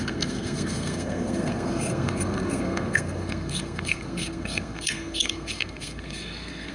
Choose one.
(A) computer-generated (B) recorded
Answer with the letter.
A